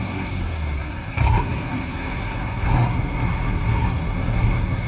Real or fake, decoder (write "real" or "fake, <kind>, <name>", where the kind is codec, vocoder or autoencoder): fake, codec, SNAC